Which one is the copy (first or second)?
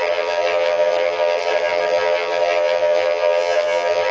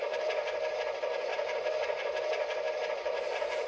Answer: first